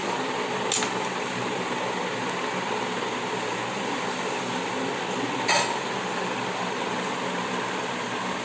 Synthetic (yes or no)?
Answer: no